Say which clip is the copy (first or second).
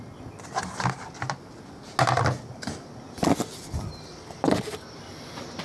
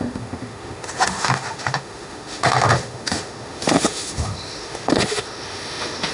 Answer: second